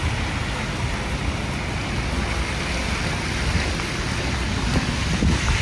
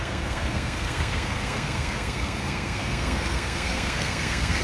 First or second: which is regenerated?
second